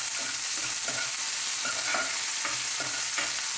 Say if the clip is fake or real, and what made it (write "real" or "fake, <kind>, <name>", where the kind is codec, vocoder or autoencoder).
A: real